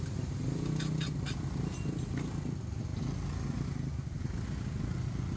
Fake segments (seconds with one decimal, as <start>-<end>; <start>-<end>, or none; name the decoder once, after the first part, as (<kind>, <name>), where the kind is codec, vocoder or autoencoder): none